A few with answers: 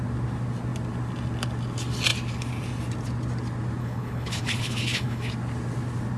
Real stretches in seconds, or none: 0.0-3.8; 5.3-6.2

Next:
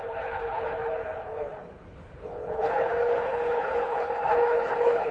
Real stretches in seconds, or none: none

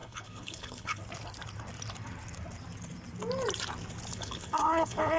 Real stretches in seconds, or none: 1.0-4.1